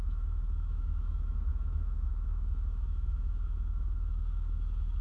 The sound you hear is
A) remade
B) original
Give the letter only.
A